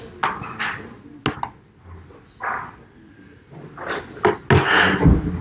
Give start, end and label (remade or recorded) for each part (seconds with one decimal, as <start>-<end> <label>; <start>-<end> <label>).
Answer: 0.0-5.4 recorded